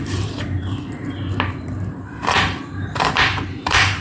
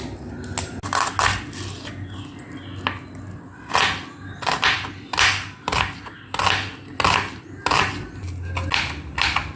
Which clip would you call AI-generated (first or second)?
first